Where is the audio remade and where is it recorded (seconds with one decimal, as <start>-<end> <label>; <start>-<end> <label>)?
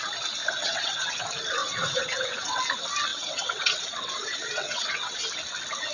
0.0-0.4 recorded; 0.4-1.2 remade; 1.2-1.6 recorded; 1.6-2.6 remade; 2.6-3.1 recorded; 3.1-5.2 remade; 5.2-5.9 recorded